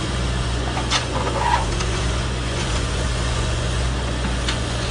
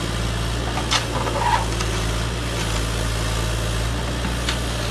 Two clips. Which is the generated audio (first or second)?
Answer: first